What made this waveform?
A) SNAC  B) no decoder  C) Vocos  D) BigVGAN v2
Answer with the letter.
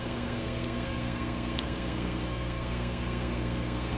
A